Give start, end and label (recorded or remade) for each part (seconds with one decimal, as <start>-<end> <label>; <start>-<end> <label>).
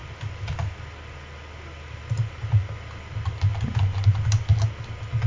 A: 0.0-5.3 recorded